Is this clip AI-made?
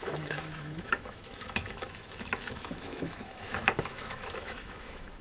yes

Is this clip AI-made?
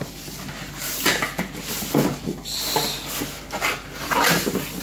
no